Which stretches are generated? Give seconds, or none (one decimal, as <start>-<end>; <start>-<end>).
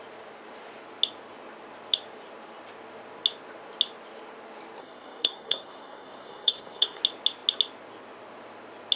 4.8-7.0